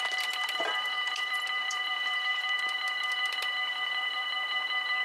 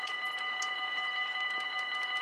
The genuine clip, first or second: second